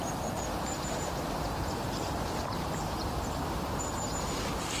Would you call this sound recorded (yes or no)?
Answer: no